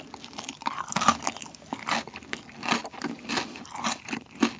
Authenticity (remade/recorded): recorded